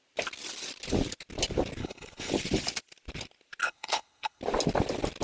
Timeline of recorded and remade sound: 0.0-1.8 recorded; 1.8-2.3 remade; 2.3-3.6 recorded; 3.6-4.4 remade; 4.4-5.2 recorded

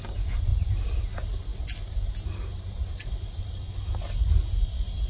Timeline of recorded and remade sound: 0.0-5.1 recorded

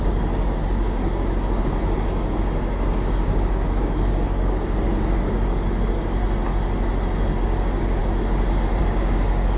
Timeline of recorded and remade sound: 0.0-6.2 remade; 6.2-7.4 recorded; 7.4-8.0 remade; 8.0-8.8 recorded; 8.8-9.6 remade

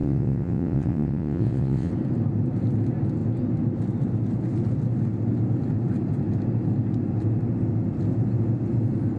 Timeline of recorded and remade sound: 0.0-1.9 remade; 1.9-9.2 recorded

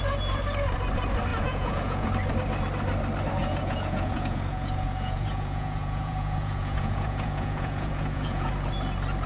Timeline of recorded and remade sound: 0.0-1.3 recorded; 1.3-2.1 remade; 2.1-3.4 recorded; 3.4-8.5 remade; 8.5-9.3 recorded

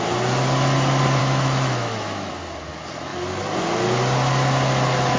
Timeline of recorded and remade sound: 0.0-1.2 recorded; 1.2-2.3 remade; 2.3-5.2 recorded